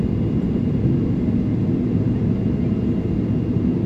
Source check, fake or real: real